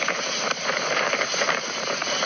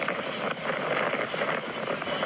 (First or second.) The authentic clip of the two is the second